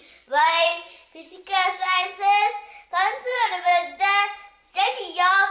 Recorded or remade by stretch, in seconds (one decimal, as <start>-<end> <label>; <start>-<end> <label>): 0.0-1.0 remade; 1.0-3.2 recorded; 3.2-3.7 remade; 3.7-4.7 recorded; 4.7-5.5 remade